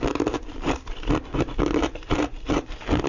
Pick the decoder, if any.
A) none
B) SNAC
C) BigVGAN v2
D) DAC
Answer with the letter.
A